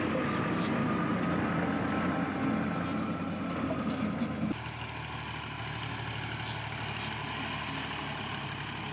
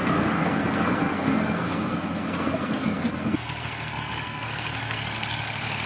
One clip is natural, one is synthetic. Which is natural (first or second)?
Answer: first